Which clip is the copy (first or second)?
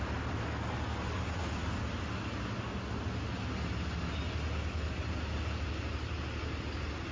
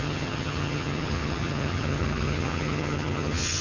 second